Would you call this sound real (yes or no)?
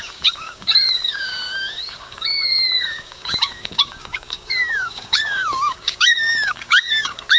no